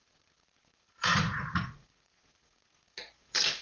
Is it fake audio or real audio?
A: fake